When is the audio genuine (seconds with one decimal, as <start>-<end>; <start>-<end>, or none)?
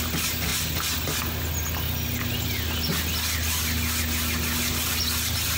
0.0-5.6